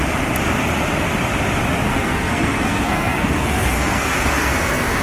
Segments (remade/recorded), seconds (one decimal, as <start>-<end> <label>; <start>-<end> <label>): 0.0-1.9 recorded; 1.9-5.0 remade

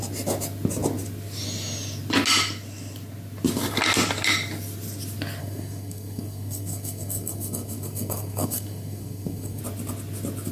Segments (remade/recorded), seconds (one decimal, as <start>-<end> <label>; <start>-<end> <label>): 0.0-5.4 recorded; 5.4-9.6 remade; 9.6-10.5 recorded

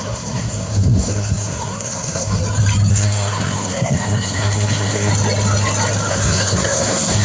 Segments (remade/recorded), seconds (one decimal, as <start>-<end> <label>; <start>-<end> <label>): 0.0-2.4 remade; 2.4-2.9 recorded; 2.9-5.1 remade; 5.1-6.1 recorded; 6.1-7.2 remade

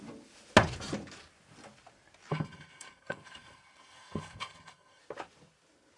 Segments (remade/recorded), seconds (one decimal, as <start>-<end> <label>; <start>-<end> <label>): 0.0-2.3 recorded; 2.3-5.0 remade; 5.0-6.0 recorded

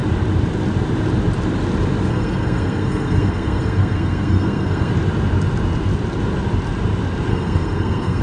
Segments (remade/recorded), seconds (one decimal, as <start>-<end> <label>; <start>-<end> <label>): 0.0-2.1 recorded; 2.1-4.9 remade; 4.9-7.3 recorded; 7.3-8.2 remade

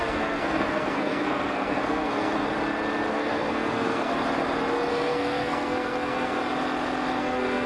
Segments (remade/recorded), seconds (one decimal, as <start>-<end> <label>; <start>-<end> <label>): 0.0-2.4 remade; 2.4-3.1 recorded; 3.1-4.1 remade; 4.1-4.9 recorded; 4.9-6.4 remade; 6.4-7.2 recorded; 7.2-7.7 remade

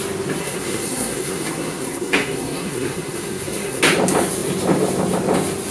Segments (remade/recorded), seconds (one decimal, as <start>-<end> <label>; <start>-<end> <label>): 0.0-0.4 recorded; 0.4-3.8 remade; 3.8-5.7 recorded

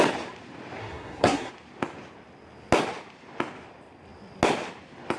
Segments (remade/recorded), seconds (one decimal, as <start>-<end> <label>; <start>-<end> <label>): 0.0-0.8 recorded; 0.8-1.5 remade; 1.5-5.2 recorded